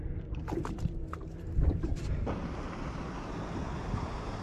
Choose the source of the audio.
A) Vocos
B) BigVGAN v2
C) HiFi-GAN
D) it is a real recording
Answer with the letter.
B